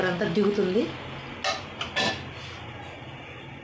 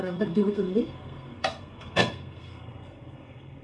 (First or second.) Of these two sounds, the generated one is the second